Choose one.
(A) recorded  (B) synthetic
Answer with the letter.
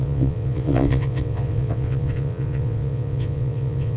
B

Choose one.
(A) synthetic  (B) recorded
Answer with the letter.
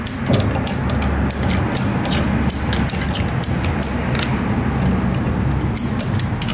B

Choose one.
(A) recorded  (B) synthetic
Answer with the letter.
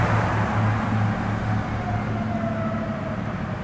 A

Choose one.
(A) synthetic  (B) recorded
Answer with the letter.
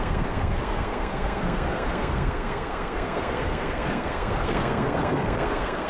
A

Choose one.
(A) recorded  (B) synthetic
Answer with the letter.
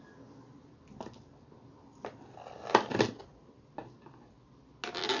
A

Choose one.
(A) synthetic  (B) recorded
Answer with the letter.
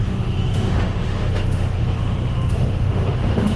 A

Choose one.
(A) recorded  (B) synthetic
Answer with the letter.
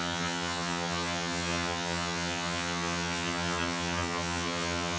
B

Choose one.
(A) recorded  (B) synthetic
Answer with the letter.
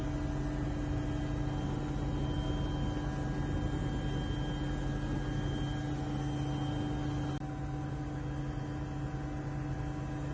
A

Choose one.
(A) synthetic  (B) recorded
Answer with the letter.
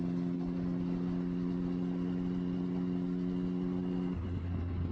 B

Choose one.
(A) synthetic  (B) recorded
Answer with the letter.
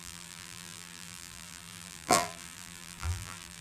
A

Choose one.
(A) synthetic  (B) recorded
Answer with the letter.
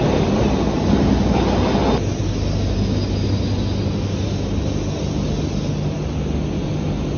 B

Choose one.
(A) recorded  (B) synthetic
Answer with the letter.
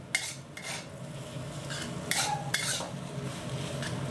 A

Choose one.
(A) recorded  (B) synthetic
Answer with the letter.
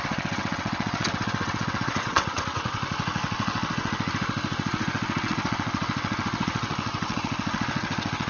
B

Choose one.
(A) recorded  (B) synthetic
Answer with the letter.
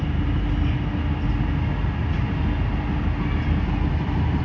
A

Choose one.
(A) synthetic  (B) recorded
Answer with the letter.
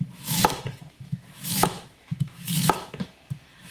A